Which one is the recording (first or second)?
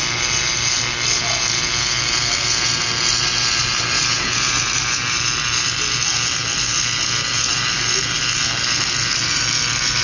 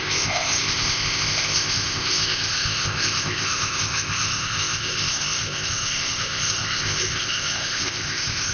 first